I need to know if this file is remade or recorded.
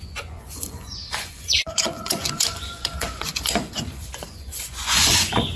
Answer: remade